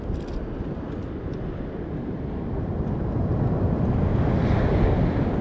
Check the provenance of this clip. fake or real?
real